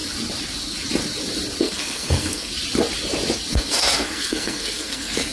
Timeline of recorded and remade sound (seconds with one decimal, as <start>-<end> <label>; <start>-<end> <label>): 0.0-1.6 recorded; 1.6-2.5 remade; 2.5-3.5 recorded; 3.5-5.3 remade